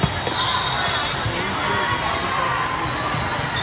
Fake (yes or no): no